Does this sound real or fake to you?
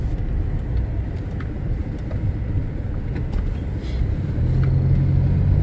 real